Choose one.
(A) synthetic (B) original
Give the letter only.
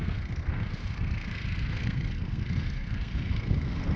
A